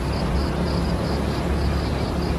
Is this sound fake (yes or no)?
no